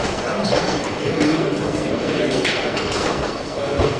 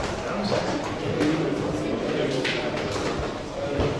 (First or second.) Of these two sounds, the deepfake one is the first